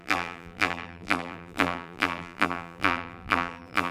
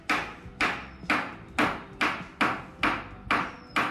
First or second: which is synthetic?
first